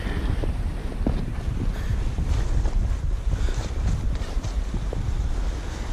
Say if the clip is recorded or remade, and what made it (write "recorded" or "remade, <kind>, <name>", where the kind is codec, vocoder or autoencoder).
recorded